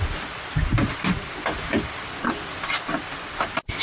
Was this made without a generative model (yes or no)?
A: yes